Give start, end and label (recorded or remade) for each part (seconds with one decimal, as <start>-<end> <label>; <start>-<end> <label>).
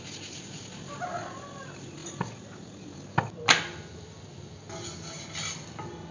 0.0-6.1 recorded